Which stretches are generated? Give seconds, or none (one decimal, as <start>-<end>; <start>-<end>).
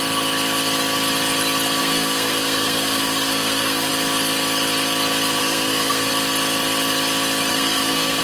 1.8-3.9; 5.4-6.1; 7.5-8.2